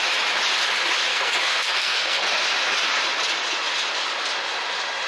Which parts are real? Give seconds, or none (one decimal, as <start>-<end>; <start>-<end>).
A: 0.0-1.1; 2.3-5.1